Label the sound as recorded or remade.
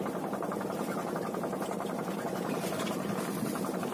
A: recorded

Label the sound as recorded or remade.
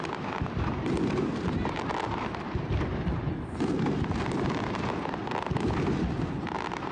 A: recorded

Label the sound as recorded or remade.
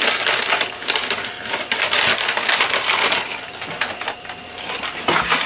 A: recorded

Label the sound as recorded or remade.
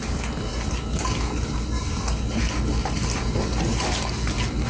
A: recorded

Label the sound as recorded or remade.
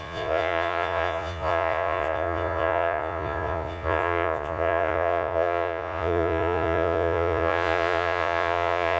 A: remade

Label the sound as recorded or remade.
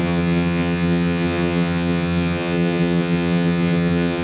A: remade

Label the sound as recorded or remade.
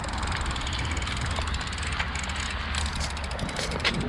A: recorded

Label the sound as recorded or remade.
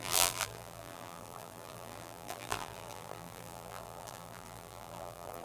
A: remade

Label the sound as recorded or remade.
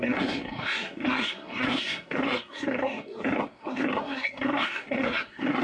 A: remade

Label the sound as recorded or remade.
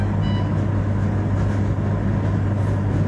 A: recorded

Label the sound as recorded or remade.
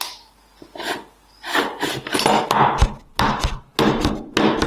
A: recorded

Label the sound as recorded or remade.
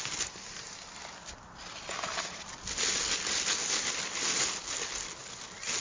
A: recorded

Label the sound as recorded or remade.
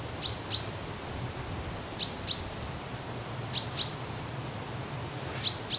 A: recorded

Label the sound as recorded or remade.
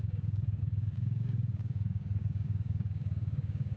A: remade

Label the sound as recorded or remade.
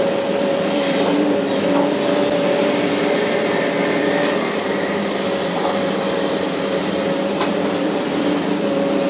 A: remade